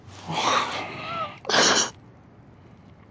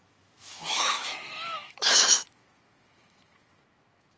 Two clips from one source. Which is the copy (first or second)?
second